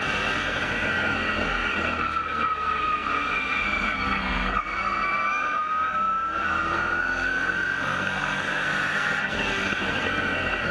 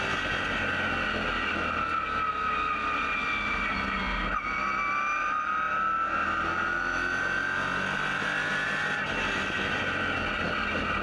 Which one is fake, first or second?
first